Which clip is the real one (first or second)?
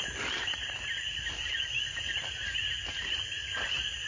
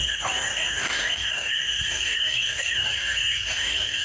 first